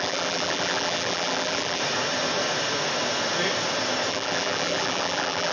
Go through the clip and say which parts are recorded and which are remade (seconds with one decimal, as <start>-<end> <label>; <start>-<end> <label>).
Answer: 0.0-1.8 remade; 1.8-4.1 recorded; 4.1-5.5 remade